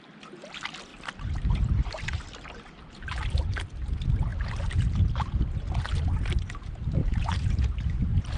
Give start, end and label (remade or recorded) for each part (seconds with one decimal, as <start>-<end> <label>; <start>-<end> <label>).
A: 0.0-0.9 recorded; 0.9-2.2 remade; 2.2-7.0 recorded; 7.0-8.4 remade